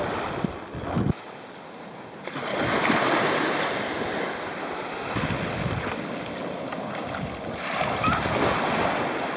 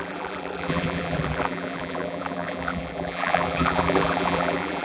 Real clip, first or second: first